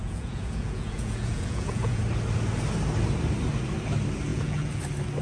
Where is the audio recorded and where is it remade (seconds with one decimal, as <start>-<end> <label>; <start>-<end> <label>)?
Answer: 0.0-2.0 remade; 2.0-4.3 recorded; 4.3-4.8 remade; 4.8-5.2 recorded